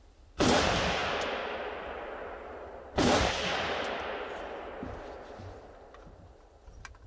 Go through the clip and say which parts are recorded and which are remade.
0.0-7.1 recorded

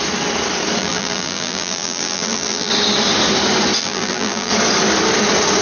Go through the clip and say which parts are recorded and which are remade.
0.0-0.8 recorded; 0.8-2.7 remade; 2.7-3.8 recorded; 3.8-4.5 remade; 4.5-5.6 recorded

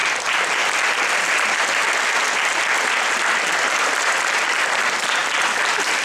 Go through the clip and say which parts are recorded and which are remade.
0.0-1.8 recorded; 1.8-4.0 remade; 4.0-5.2 recorded; 5.2-6.0 remade